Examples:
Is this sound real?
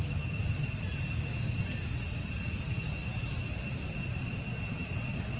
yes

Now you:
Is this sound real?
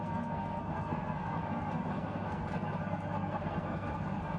no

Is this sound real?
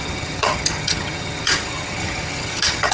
no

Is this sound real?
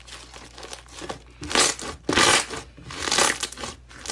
yes